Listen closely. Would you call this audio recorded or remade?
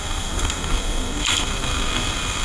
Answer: remade